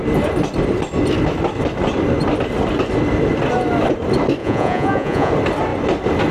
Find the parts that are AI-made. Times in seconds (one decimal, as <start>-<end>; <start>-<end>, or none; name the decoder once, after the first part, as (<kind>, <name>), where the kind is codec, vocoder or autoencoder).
4.4-5.3 (vocoder, Vocos)